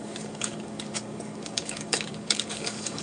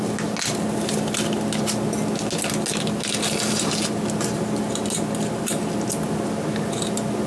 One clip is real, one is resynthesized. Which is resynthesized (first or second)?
first